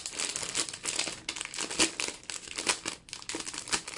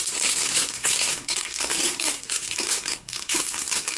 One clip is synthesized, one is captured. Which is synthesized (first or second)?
second